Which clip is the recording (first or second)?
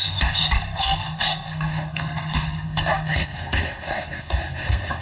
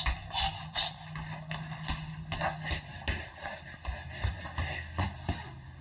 second